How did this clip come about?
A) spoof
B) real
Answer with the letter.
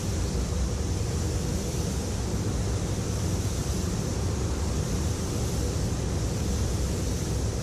A